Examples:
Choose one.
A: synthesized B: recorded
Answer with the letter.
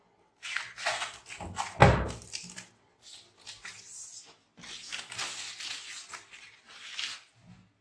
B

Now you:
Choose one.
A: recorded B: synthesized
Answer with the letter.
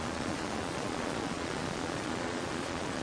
B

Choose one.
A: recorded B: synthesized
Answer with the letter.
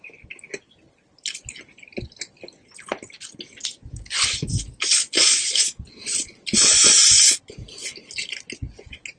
A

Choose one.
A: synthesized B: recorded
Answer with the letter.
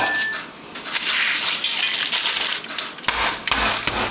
B